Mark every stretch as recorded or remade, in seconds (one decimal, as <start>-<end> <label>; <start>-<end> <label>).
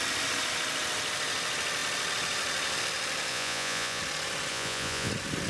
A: 0.0-3.3 recorded; 3.3-4.0 remade; 4.0-4.5 recorded; 4.5-5.1 remade; 5.1-5.5 recorded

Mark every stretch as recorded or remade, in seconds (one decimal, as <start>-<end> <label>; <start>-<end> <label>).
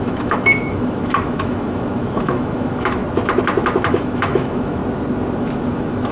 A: 0.0-3.0 remade; 3.0-3.9 recorded; 3.9-4.8 remade; 4.8-5.4 recorded; 5.4-6.1 remade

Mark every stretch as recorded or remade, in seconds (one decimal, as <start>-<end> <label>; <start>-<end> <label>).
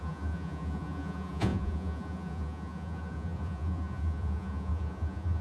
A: 0.0-5.4 remade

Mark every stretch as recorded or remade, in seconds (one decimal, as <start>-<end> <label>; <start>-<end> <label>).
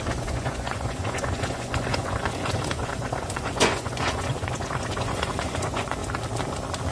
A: 0.0-6.0 remade; 6.0-6.9 recorded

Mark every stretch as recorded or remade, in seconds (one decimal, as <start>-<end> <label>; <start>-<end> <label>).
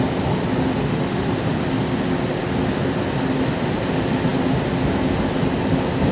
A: 0.0-0.8 recorded; 0.8-1.3 remade; 1.3-6.1 recorded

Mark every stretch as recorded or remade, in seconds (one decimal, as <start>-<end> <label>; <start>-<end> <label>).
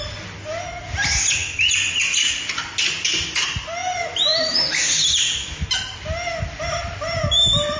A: 0.0-3.8 recorded; 3.8-5.8 remade; 5.8-7.8 recorded